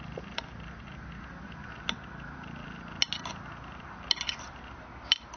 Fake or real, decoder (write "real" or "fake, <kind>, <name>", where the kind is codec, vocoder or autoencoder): real